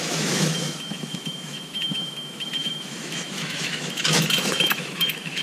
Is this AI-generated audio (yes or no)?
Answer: yes